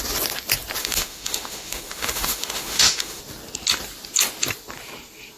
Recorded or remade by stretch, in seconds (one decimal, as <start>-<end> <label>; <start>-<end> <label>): 0.0-0.8 recorded; 0.8-3.2 remade; 3.2-5.4 recorded